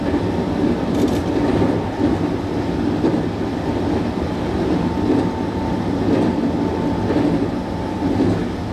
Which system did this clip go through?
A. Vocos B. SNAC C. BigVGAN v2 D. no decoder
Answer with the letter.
D